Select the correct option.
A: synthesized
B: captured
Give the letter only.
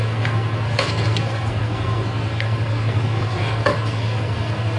A